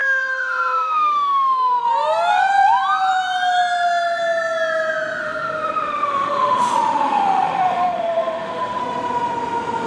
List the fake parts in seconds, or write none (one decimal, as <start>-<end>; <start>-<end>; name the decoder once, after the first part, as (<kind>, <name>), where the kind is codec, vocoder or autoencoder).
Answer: 0.0-1.8 (autoencoder, DAC-VAE); 5.2-8.8